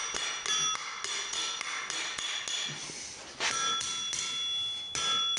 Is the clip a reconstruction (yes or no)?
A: no